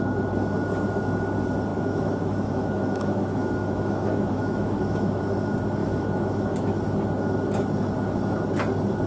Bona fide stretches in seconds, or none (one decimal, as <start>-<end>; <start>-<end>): 0.0-1.7; 5.2-5.8; 6.7-9.1